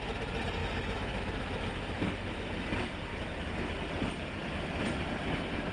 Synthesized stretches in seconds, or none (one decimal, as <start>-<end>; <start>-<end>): 0.6-1.7; 3.1-3.7